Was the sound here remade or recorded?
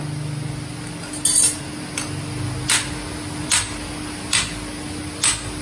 recorded